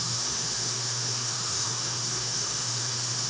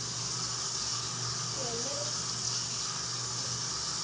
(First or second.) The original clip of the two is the second